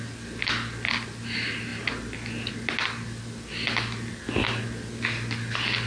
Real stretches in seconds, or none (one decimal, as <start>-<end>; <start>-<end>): 0.0-5.9